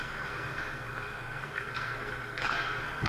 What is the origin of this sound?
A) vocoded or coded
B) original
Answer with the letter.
A